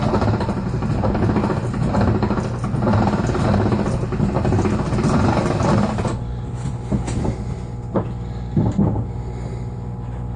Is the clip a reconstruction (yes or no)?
no